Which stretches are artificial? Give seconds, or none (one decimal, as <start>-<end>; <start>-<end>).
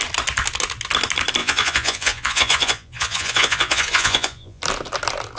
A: 1.4-4.6